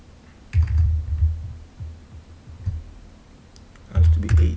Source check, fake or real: real